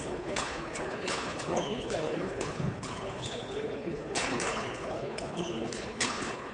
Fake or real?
fake